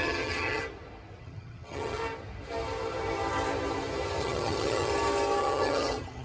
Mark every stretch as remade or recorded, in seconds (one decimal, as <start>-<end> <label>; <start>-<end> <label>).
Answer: 0.0-0.6 remade; 0.6-1.2 recorded; 1.2-2.0 remade; 2.0-4.2 recorded; 4.2-4.9 remade; 4.9-5.4 recorded; 5.4-6.2 remade